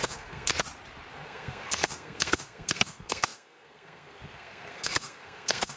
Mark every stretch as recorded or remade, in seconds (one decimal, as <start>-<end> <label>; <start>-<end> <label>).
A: 0.0-0.5 remade; 0.5-1.1 recorded; 1.1-5.8 remade